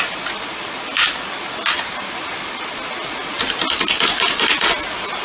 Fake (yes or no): no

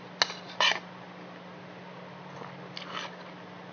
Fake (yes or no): no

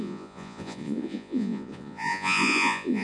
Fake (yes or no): yes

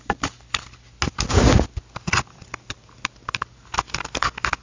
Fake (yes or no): no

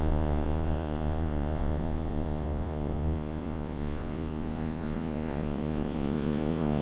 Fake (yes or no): yes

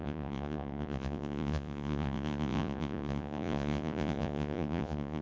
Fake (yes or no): yes